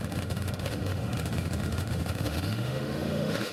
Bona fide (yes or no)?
no